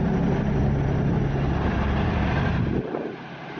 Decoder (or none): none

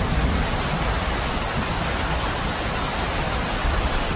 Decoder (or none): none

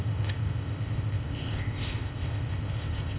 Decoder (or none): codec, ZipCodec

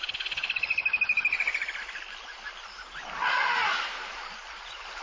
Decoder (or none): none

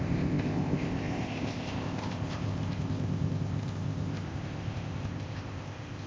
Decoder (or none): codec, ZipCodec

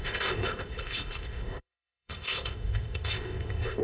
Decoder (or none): codec, ZipCodec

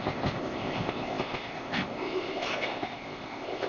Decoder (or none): codec, ZipCodec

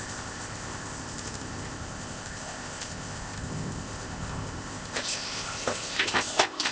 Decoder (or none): codec, ZipCodec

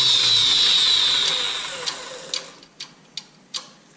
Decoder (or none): none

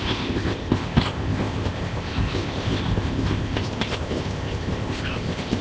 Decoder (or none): codec, ZipCodec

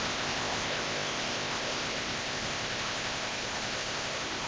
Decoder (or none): codec, ZipCodec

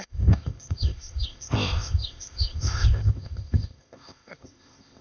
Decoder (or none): codec, ZipCodec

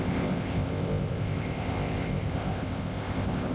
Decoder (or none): codec, ZipCodec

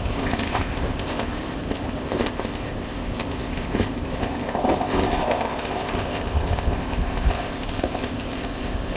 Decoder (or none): codec, ZipCodec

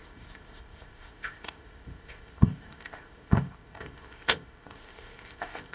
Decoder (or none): codec, ZipCodec